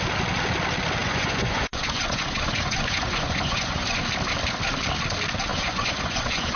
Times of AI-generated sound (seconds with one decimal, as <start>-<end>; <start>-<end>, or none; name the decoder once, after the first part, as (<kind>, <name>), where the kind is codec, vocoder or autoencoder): 1.0-4.0 (vocoder, Vocos); 5.5-6.6